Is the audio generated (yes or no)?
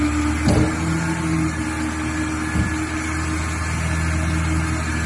no